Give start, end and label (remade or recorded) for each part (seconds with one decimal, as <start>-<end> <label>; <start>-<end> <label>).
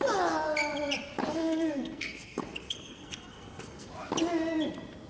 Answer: 0.0-1.3 recorded; 1.3-3.9 remade; 3.9-5.1 recorded